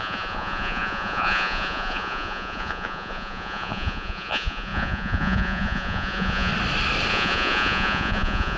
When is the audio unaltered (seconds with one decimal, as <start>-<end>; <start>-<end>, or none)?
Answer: 6.5-7.1